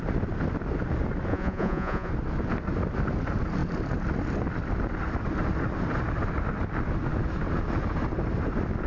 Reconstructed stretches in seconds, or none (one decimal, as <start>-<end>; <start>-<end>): 1.3-2.1

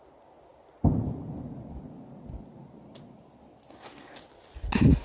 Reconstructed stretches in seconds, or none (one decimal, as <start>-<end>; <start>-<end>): none

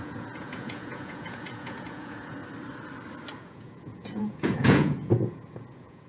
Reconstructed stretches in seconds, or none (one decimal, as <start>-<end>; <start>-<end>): 0.0-2.4; 3.3-6.1

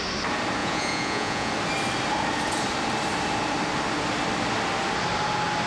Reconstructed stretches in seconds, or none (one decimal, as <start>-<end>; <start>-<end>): 0.6-1.5